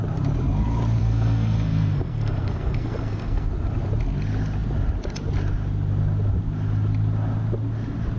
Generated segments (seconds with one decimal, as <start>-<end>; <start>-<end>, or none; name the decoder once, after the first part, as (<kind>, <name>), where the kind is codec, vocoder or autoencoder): 1.0-3.5 (codec, SNAC)